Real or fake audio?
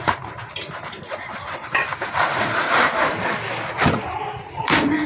fake